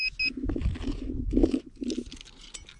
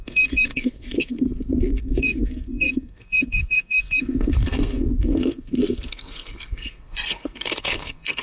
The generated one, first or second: second